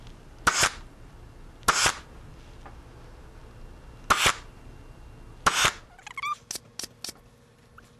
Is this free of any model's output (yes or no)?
yes